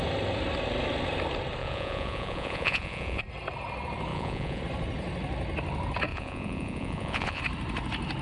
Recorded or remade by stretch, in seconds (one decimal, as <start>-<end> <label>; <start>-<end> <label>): 0.0-1.6 recorded; 1.6-3.2 remade; 3.2-4.1 recorded; 4.1-4.6 remade; 4.6-6.1 recorded; 6.1-7.4 remade; 7.4-8.2 recorded